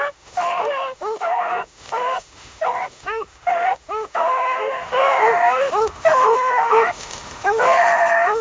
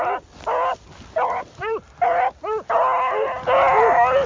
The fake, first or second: first